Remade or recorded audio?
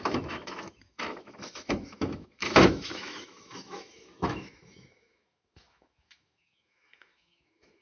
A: remade